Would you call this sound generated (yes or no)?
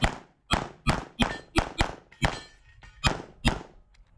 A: no